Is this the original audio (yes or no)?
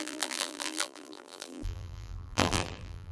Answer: no